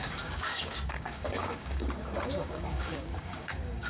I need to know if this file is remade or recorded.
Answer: remade